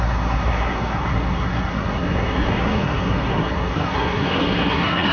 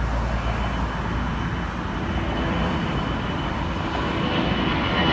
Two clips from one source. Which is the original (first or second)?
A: second